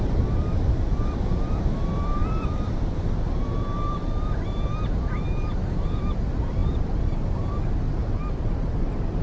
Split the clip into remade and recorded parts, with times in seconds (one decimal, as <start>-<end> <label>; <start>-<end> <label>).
0.0-9.2 remade